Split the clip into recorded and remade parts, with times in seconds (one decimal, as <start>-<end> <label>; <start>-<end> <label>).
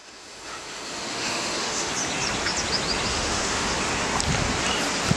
0.0-1.9 remade; 1.9-3.1 recorded; 3.1-3.7 remade; 3.7-5.2 recorded